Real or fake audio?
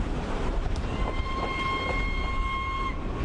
real